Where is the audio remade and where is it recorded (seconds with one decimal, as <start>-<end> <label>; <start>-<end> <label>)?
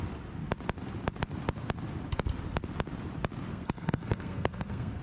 0.0-3.5 recorded; 3.5-5.0 remade